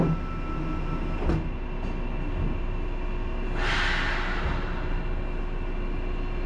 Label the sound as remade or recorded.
recorded